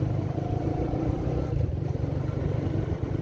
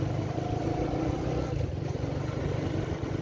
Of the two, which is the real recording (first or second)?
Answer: second